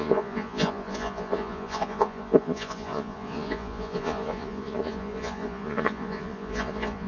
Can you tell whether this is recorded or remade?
remade